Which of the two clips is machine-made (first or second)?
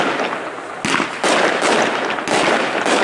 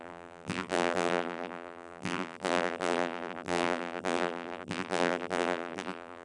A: second